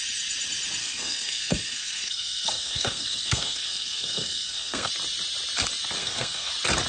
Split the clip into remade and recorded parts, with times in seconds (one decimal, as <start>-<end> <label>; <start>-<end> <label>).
0.0-0.8 recorded; 0.8-4.9 remade; 4.9-6.0 recorded; 6.0-6.5 remade; 6.5-6.9 recorded